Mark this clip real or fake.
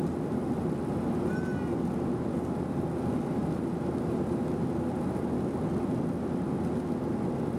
real